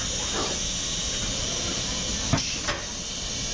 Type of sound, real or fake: real